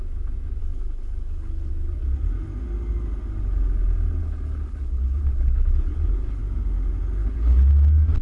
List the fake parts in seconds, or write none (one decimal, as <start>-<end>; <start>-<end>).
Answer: 0.6-1.7; 4.2-6.4; 7.2-7.7